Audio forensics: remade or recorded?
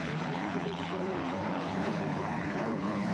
remade